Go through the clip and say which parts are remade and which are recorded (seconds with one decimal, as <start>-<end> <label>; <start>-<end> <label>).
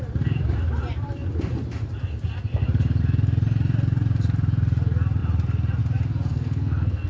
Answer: 0.0-6.3 recorded; 6.3-7.1 remade